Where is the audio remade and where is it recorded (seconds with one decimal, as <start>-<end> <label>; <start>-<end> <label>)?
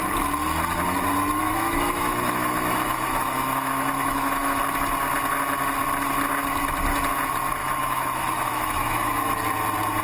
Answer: 0.0-1.4 recorded; 1.4-4.6 remade; 4.6-7.6 recorded; 7.6-9.4 remade; 9.4-10.0 recorded